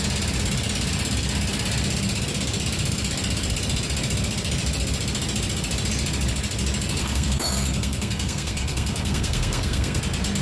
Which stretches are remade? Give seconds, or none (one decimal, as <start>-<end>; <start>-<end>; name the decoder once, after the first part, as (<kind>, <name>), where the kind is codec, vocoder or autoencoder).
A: 7.0-10.0 (codec, SNAC)